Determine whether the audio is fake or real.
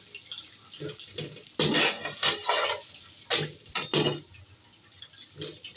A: real